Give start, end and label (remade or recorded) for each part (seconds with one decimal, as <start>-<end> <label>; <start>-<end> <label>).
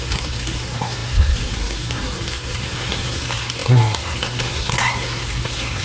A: 0.0-5.8 remade